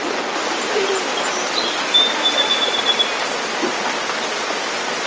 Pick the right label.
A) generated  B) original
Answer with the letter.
B